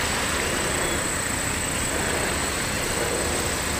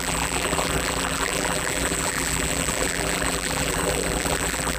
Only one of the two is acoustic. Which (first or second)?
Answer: first